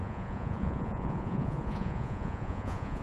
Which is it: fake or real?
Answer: fake